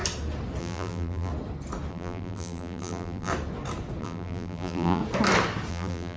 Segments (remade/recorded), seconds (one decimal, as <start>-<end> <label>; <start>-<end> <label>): 0.0-0.6 recorded; 0.6-1.3 remade; 1.3-1.9 recorded; 1.9-3.3 remade; 3.3-4.0 recorded; 4.0-5.0 remade; 5.0-5.7 recorded; 5.7-6.2 remade